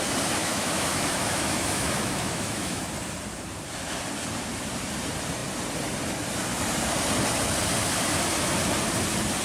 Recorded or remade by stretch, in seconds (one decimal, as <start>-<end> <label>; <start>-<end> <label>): 0.0-0.4 recorded; 0.4-2.8 remade; 2.8-9.4 recorded